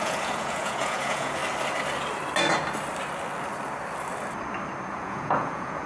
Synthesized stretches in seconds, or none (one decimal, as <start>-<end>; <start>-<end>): 0.0-1.4; 4.9-5.9